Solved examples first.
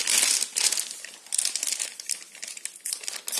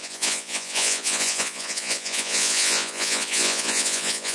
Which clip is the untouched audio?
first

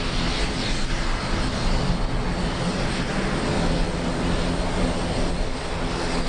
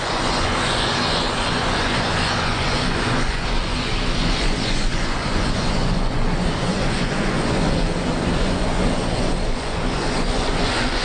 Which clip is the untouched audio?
first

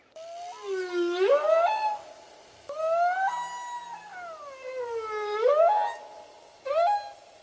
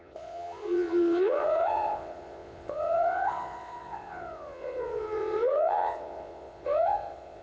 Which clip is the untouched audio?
first